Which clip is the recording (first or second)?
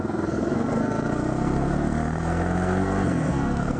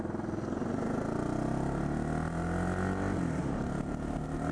second